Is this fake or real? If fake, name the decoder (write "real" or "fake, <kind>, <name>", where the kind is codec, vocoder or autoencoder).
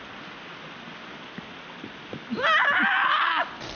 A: real